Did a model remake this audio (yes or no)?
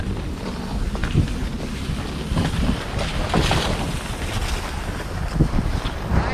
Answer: no